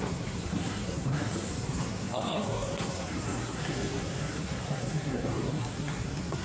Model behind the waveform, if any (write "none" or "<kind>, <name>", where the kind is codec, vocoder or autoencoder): codec, SNAC